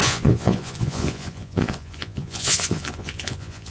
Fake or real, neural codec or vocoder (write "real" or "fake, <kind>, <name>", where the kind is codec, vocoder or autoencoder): fake, vocoder, Vocos